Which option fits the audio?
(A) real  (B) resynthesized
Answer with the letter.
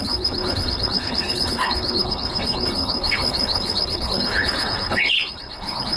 B